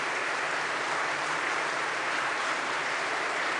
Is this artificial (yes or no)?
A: yes